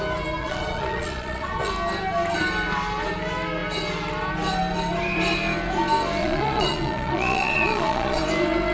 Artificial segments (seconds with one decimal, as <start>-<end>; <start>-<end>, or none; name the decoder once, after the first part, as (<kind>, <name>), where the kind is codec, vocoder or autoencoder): 0.4-1.7 (vocoder, Vocos); 6.2-8.2

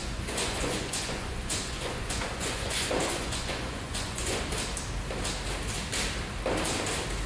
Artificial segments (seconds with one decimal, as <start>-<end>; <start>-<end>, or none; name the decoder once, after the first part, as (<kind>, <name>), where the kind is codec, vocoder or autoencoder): 0.0-4.4 (vocoder, Vocos)